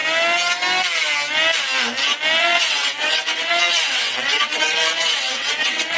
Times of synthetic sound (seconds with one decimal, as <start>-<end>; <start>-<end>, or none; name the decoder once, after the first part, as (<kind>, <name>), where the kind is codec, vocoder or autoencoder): 2.4-6.0 (vocoder, WaveNeXt)